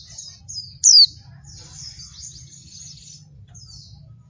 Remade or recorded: recorded